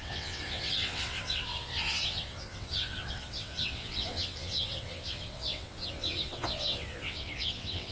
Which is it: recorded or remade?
remade